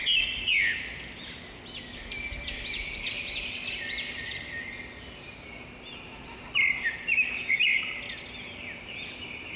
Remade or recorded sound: recorded